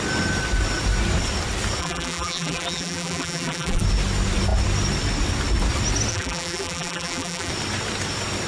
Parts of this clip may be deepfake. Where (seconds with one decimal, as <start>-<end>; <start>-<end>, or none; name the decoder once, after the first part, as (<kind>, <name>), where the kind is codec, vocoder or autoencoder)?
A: 1.8-3.8 (vocoder, BigVGAN v2); 6.1-7.5